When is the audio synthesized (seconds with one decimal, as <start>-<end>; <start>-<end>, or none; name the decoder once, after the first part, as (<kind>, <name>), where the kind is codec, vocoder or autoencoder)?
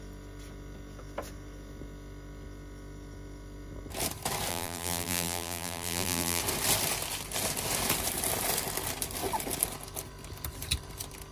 4.5-6.4 (vocoder, BigVGAN v2)